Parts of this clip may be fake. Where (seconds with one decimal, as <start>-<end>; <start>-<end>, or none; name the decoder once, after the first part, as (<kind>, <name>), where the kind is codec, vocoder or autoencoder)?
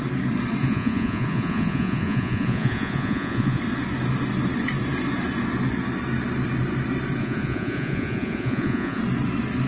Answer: 0.6-3.6 (vocoder, Vocos); 7.2-9.0